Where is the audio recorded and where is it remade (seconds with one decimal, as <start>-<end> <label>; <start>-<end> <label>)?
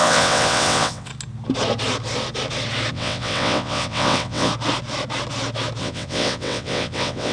0.0-1.1 remade; 1.1-2.9 recorded; 2.9-4.5 remade; 4.5-5.8 recorded; 5.8-7.3 remade